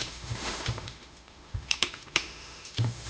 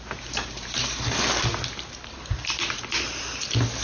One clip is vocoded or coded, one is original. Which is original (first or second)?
second